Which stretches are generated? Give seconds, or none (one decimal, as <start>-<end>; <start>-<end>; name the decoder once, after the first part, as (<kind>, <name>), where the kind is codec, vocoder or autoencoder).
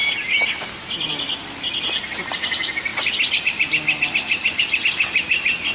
none